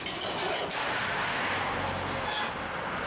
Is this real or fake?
real